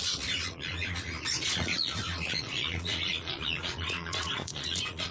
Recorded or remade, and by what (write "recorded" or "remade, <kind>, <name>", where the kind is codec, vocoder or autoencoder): remade, vocoder, Vocos